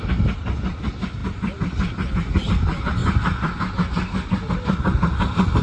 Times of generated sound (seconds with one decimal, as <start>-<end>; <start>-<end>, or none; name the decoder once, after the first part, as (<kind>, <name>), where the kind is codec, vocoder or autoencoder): none